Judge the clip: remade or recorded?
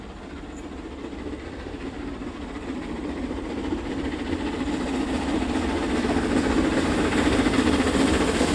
recorded